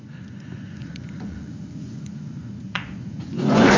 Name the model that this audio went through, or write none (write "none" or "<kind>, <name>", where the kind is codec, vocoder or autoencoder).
vocoder, Vocos